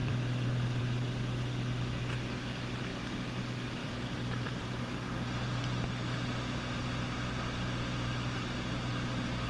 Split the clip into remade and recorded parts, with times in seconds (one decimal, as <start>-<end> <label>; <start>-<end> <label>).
0.0-0.8 remade; 0.8-3.8 recorded; 3.8-4.6 remade; 4.6-9.5 recorded